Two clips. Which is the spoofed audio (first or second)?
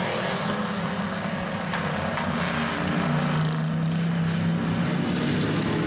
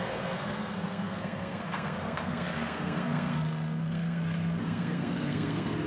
second